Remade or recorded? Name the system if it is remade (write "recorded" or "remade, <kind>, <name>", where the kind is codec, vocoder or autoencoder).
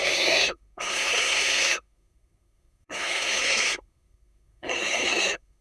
remade, codec, SNAC